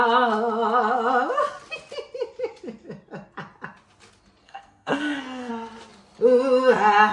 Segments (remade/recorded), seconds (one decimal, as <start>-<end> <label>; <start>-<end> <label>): 0.0-4.4 recorded; 4.4-5.5 remade; 5.5-7.1 recorded